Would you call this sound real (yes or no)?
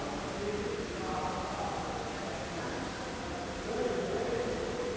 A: yes